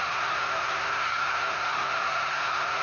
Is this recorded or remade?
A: remade